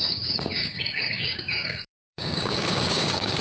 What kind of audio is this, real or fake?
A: fake